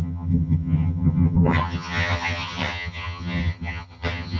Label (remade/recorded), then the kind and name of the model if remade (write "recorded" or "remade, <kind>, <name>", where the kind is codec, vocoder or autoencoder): remade, vocoder, HiFi-GAN